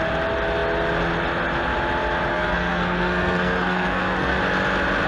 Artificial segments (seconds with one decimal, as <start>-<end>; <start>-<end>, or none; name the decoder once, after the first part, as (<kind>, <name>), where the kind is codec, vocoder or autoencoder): 2.3-4.4 (codec, SNAC)